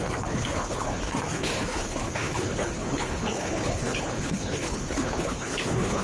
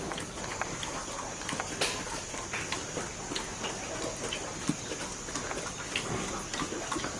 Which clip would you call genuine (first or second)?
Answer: second